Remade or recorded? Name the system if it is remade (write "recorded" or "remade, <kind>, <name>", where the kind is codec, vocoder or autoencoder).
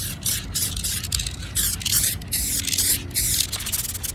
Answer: recorded